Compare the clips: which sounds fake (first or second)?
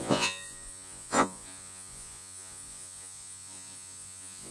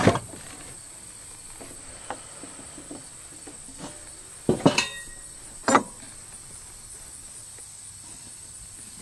first